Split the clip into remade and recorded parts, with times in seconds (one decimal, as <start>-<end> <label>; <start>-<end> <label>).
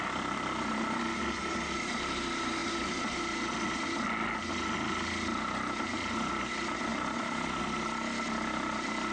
0.0-9.1 recorded